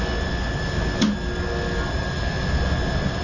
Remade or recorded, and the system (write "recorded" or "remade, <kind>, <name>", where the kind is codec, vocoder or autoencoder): recorded